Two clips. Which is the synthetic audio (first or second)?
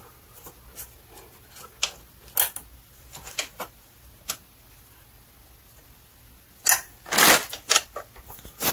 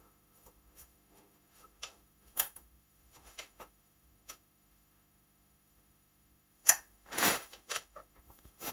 second